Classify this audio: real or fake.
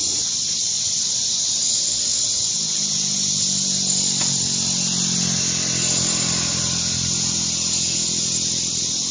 real